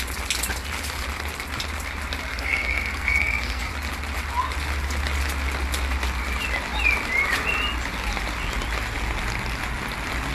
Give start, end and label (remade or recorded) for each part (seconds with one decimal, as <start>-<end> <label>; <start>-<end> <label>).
0.0-2.3 recorded; 2.3-3.7 remade; 3.7-10.3 recorded